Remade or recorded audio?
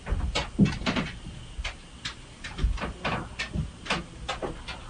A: recorded